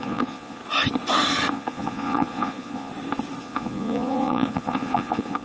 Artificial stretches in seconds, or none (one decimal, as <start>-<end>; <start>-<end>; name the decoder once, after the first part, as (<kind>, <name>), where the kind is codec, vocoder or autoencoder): 0.0-0.6 (vocoder, Vocos); 1.5-2.9; 3.4-5.4